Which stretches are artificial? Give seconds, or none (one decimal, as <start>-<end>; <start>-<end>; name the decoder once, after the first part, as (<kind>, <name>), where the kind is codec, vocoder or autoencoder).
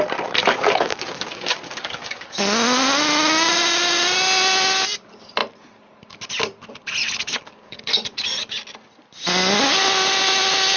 0.4-2.4 (codec, DAC); 7.2-7.8